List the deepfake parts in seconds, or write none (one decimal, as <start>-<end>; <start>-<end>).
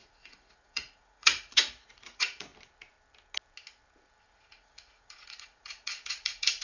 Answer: 0.0-2.5; 4.3-6.6